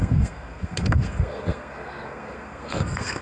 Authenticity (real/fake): fake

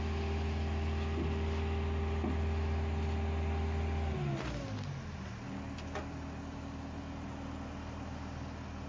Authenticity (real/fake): real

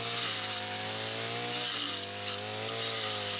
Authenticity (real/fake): real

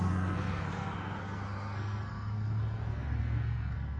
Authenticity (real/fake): fake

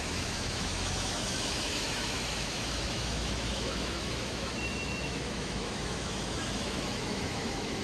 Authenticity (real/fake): fake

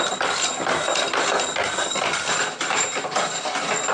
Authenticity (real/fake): real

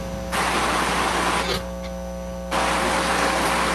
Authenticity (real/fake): real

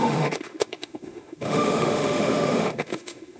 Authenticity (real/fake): fake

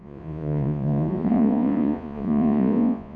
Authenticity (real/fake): fake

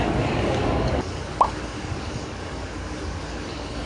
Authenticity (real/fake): fake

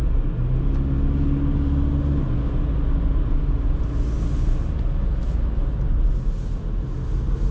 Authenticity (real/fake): real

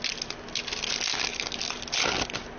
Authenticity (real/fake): real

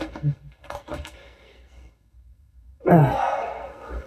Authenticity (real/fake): fake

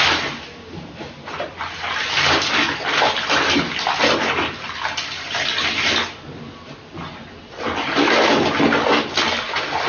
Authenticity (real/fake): real